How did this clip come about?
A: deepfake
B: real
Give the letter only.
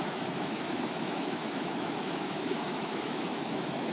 A